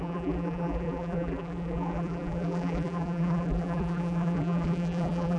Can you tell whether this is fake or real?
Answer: fake